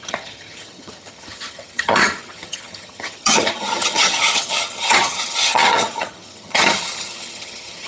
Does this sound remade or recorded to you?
remade